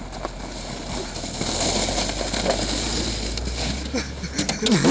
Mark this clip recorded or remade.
recorded